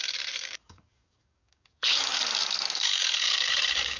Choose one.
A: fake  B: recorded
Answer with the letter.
A